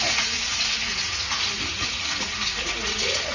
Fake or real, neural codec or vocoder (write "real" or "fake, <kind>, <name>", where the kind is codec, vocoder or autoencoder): fake, vocoder, Vocos